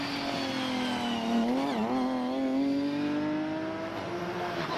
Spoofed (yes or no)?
no